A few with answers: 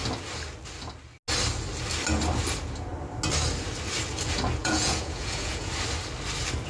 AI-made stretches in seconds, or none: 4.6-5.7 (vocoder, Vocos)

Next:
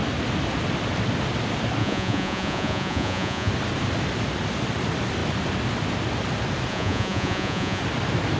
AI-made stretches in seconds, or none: 1.8-3.5 (vocoder, Vocos); 6.7-7.8

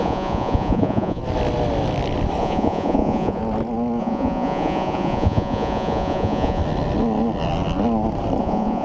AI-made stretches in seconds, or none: 0.0-1.2 (vocoder, Vocos); 2.4-3.4; 4.0-6.6; 8.4-8.8

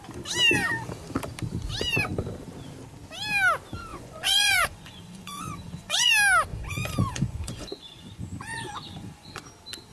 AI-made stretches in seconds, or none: 3.9-6.1 (vocoder, Vocos); 6.5-9.4

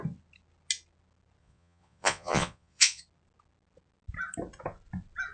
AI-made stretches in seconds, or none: 1.4-3.0 (vocoder, Vocos)